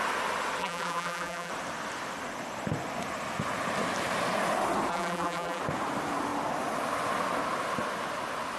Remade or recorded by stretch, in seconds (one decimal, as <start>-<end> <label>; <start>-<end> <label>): 0.0-0.6 recorded; 0.6-1.5 remade; 1.5-4.9 recorded; 4.9-5.6 remade; 5.6-8.6 recorded